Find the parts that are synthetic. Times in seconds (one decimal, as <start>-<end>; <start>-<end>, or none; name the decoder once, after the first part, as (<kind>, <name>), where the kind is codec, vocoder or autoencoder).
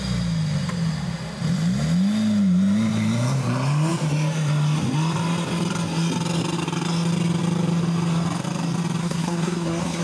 9.0-10.0 (codec, SNAC)